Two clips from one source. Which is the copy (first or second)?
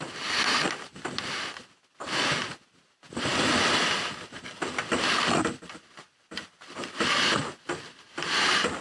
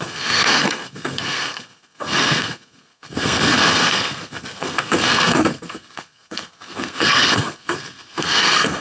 second